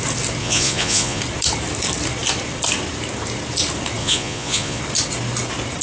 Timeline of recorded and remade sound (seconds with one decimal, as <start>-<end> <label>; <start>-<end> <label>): 0.0-0.4 recorded; 0.4-1.2 remade; 1.2-4.0 recorded; 4.0-4.8 remade; 4.8-5.8 recorded